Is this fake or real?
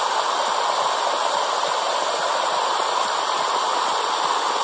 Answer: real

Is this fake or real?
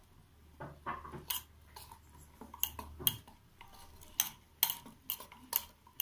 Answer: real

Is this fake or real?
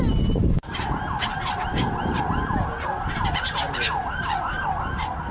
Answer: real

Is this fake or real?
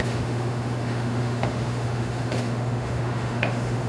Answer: fake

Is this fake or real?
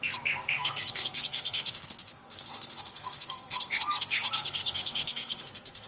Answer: fake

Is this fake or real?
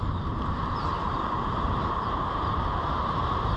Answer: fake